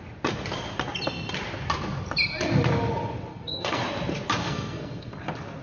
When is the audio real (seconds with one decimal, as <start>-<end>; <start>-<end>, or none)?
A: 0.0-3.3; 3.8-4.4; 5.1-5.6